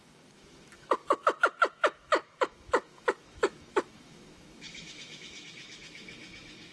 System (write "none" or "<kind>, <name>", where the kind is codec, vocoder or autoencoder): autoencoder, DAC-VAE